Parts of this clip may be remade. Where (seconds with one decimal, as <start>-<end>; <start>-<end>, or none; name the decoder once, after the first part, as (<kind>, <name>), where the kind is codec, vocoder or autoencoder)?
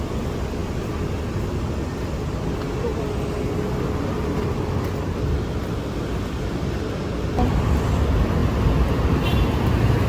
none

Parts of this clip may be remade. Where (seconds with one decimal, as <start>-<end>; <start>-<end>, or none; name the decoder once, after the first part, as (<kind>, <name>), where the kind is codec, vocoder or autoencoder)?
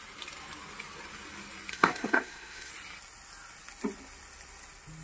1.7-2.7 (codec, SNAC)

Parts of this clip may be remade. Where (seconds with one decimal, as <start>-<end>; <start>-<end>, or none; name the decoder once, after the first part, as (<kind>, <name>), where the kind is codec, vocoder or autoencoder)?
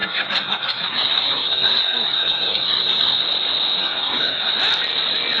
0.0-3.2 (codec, SNAC); 3.8-4.5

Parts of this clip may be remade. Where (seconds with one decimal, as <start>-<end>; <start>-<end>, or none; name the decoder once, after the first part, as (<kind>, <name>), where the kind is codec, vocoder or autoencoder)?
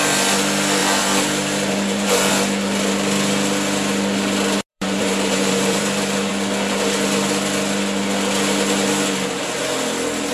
0.8-2.3 (vocoder, BigVGAN v2); 4.7-6.3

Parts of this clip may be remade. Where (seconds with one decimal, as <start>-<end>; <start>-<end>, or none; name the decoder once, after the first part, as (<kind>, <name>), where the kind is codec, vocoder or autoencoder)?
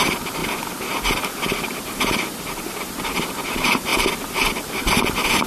0.0-0.4 (vocoder, BigVGAN v2); 1.7-3.9; 4.5-5.5